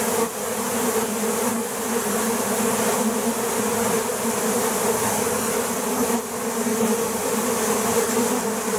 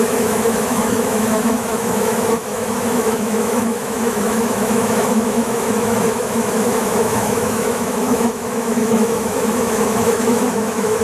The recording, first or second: first